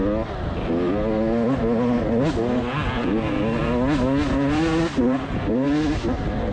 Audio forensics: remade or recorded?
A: recorded